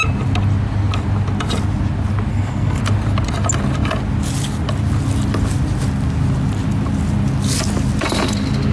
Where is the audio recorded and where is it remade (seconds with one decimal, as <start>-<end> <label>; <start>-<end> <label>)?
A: 0.0-2.3 recorded; 2.3-2.8 remade; 2.8-8.7 recorded